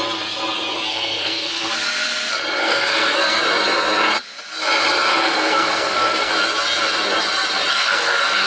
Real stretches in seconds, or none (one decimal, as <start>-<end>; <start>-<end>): 0.0-0.9; 1.7-2.6; 3.4-5.1; 6.3-7.7